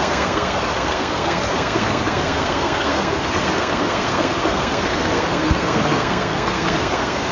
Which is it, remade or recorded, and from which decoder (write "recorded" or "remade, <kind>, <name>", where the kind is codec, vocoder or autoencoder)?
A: remade, codec, SNAC